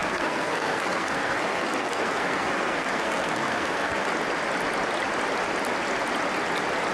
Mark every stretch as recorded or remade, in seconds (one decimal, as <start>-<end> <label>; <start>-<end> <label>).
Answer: 0.0-4.1 remade; 4.1-6.9 recorded

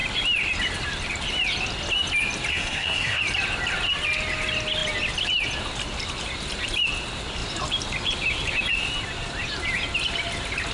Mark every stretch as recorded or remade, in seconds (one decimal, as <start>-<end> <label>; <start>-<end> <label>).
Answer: 0.0-2.5 recorded; 2.5-3.2 remade; 3.2-10.7 recorded

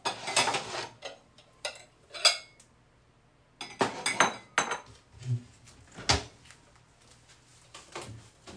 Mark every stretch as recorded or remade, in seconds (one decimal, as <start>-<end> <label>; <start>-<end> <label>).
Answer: 0.0-8.6 recorded

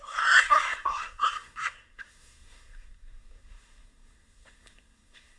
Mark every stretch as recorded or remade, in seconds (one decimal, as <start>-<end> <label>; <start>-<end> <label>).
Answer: 0.0-5.4 remade

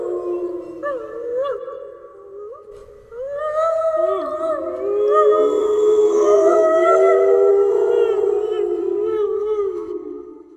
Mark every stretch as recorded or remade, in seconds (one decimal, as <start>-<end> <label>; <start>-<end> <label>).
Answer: 0.0-5.6 recorded; 5.6-7.5 remade; 7.5-8.8 recorded; 8.8-10.6 remade

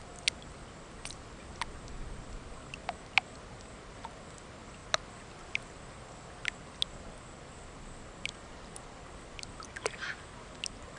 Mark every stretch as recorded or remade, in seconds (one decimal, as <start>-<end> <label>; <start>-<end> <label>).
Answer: 0.0-11.0 recorded